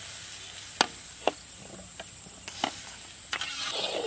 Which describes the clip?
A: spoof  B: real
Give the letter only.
B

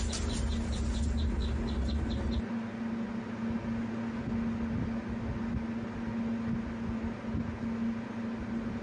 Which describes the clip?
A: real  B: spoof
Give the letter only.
A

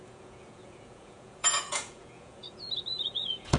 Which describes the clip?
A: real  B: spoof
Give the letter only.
B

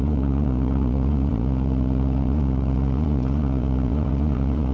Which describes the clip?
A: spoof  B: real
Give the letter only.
A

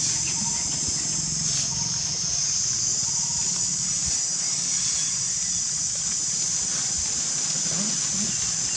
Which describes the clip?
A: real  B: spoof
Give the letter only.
A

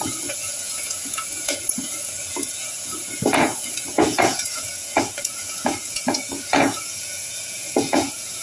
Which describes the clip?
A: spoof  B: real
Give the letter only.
A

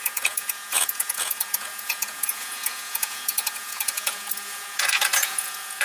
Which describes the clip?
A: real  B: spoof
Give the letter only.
B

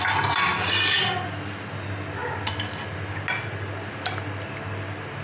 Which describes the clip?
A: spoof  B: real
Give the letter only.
B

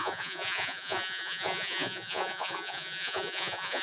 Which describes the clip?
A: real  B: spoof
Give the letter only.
B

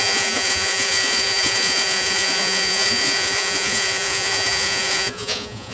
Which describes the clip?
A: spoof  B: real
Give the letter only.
A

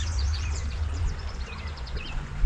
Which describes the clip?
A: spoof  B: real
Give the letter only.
A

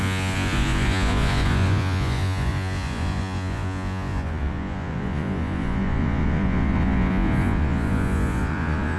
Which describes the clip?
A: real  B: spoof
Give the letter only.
B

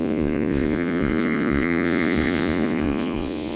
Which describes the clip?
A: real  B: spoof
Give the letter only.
B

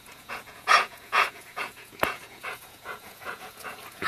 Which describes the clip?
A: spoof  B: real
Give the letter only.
A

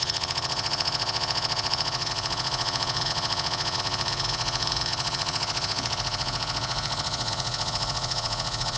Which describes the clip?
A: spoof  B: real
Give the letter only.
A